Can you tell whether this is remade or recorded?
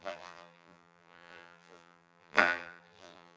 remade